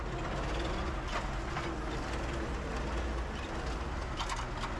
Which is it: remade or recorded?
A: recorded